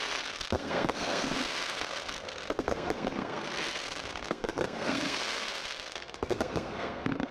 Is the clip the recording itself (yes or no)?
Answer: no